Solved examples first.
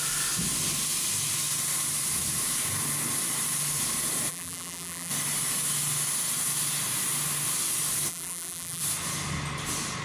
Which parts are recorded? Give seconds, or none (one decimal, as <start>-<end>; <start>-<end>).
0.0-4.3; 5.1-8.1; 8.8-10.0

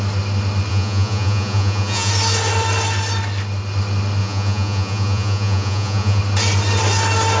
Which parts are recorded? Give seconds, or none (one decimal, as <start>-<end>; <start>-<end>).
0.0-0.7; 2.1-4.2; 6.2-7.4

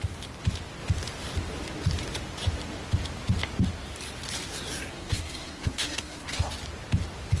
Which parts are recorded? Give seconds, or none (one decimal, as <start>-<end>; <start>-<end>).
0.0-4.9; 6.5-7.4

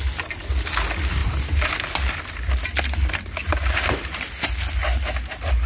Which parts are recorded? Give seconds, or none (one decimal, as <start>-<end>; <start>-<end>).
0.0-1.2; 1.8-3.4; 4.5-5.7